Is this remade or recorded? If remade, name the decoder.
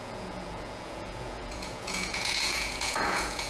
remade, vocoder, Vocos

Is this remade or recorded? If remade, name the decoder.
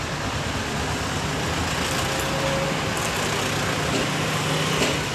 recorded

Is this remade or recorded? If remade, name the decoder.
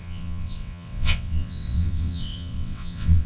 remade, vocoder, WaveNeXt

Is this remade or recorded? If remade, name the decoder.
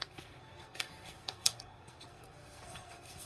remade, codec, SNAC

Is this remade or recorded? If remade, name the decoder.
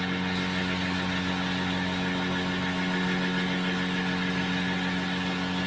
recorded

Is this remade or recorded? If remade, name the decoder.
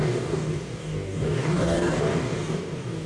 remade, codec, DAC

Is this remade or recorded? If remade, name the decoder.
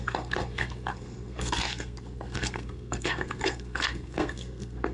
remade, codec, SNAC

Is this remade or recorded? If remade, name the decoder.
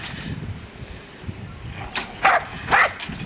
recorded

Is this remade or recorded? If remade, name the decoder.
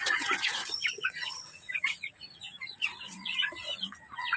remade, vocoder, Vocos